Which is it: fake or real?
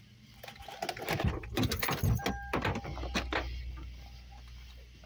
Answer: real